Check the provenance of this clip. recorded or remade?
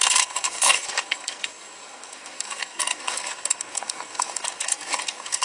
remade